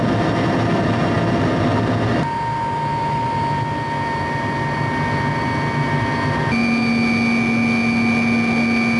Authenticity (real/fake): real